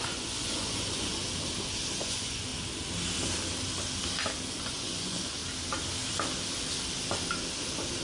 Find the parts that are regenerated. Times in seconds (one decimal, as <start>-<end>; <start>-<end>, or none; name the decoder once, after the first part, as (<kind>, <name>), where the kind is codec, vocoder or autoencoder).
0.0-1.2 (vocoder, Vocos); 2.0-2.5; 4.5-5.4